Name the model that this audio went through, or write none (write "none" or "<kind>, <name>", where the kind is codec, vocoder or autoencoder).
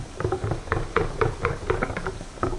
codec, DAC